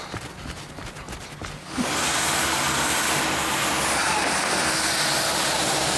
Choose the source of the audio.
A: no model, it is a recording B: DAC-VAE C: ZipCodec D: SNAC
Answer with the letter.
A